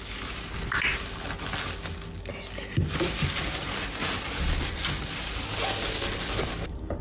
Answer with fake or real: real